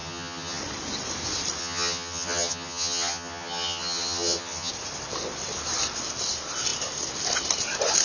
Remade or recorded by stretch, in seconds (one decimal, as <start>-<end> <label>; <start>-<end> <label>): 0.0-0.6 remade; 0.6-1.6 recorded; 1.6-4.7 remade; 4.7-8.0 recorded